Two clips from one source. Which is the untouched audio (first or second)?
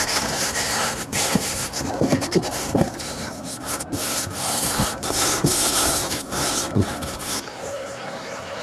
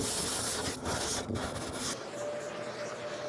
second